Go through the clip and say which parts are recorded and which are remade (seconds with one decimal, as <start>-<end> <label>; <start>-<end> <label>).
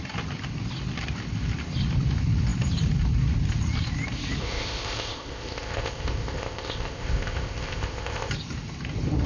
0.0-4.4 recorded; 4.4-8.3 remade; 8.3-9.3 recorded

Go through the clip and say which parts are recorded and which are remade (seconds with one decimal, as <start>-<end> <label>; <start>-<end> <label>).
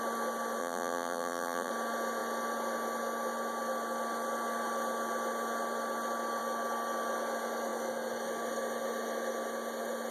0.0-0.6 recorded; 0.6-1.7 remade; 1.7-10.1 recorded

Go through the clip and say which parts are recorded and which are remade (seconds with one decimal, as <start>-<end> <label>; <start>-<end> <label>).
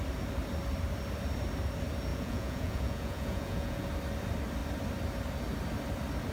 0.0-2.1 recorded; 2.1-3.9 remade; 3.9-6.3 recorded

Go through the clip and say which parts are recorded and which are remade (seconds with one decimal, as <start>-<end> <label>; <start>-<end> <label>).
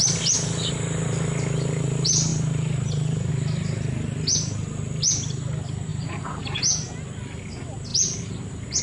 0.0-2.3 recorded; 2.3-3.3 remade; 3.3-5.9 recorded; 5.9-6.6 remade; 6.6-7.9 recorded; 7.9-8.8 remade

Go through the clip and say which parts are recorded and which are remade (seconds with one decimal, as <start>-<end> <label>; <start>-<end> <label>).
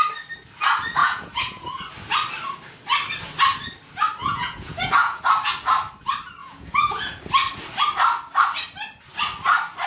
0.0-1.0 recorded; 1.0-1.8 remade; 1.8-4.2 recorded; 4.2-5.2 remade; 5.2-6.4 recorded; 6.4-7.2 remade; 7.2-9.9 recorded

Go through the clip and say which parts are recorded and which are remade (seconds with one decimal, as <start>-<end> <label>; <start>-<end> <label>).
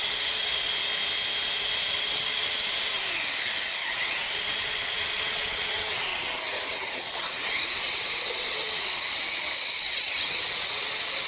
0.0-0.7 remade; 0.7-1.9 recorded; 1.9-3.0 remade; 3.0-3.8 recorded; 3.8-11.3 remade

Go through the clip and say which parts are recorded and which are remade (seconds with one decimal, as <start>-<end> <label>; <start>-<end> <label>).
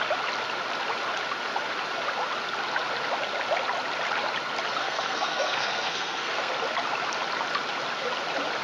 0.0-4.8 recorded; 4.8-6.5 remade; 6.5-8.6 recorded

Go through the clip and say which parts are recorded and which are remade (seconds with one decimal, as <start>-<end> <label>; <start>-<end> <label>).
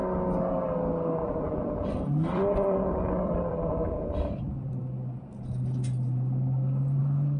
0.0-1.4 recorded; 1.4-4.8 remade; 4.8-7.0 recorded; 7.0-7.4 remade